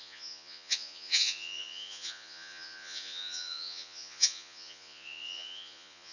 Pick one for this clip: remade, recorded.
remade